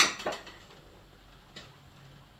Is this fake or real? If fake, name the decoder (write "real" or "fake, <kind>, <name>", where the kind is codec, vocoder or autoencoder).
real